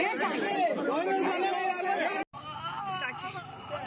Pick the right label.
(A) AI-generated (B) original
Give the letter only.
B